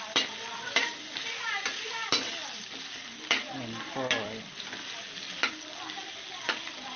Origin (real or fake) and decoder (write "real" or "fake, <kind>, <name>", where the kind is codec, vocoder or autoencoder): real